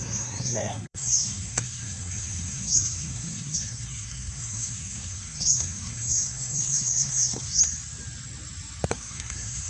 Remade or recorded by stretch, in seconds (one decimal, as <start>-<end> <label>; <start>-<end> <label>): 0.0-7.6 remade; 7.6-8.9 recorded; 8.9-9.7 remade